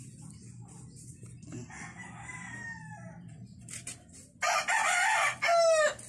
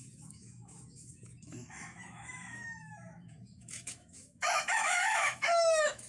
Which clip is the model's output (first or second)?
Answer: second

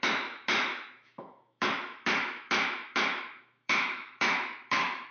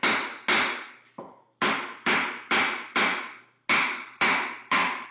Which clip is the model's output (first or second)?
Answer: first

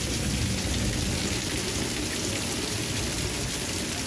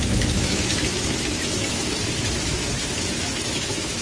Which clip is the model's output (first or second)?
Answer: second